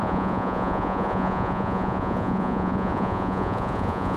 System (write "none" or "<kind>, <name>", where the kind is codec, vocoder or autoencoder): vocoder, Vocos